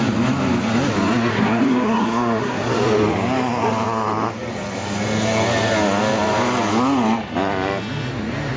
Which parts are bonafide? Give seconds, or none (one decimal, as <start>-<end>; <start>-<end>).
0.0-1.3; 2.7-8.6